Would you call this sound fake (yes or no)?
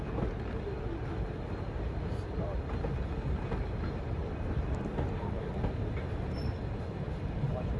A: no